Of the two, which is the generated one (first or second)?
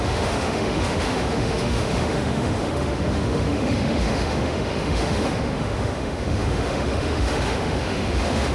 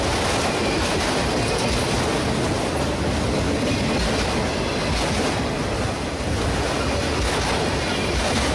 first